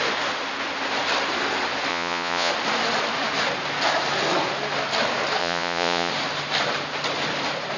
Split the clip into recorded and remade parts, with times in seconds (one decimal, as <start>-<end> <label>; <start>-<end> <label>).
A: 0.0-1.9 recorded; 1.9-2.5 remade; 2.5-5.4 recorded; 5.4-6.1 remade; 6.1-7.8 recorded

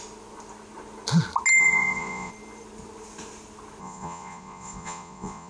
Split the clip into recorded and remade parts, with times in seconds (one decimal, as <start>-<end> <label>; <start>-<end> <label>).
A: 0.0-1.6 recorded; 1.6-2.3 remade; 2.3-3.8 recorded; 3.8-5.5 remade